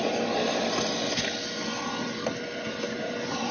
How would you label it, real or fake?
real